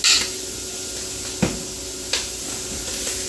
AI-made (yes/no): no